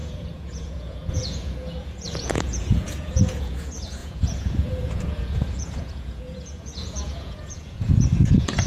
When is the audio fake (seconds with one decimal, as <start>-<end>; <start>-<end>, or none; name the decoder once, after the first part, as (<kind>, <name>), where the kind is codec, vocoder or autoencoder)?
0.0-8.7 (vocoder, Vocos)